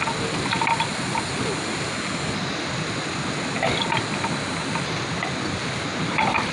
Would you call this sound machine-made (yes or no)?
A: no